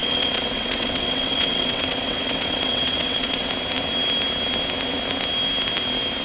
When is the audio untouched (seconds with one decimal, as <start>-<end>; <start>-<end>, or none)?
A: 3.5-6.2